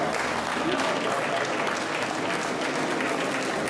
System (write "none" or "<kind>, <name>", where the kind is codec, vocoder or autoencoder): none